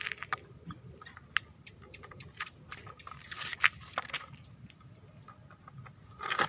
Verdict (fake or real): real